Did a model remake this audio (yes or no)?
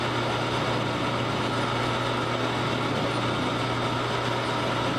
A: no